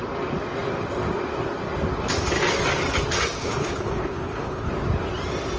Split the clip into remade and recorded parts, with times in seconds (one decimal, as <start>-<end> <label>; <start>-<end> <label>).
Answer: 0.0-3.6 recorded; 3.6-4.7 remade; 4.7-5.6 recorded